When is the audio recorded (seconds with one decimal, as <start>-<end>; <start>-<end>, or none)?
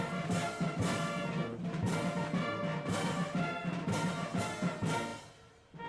0.0-5.1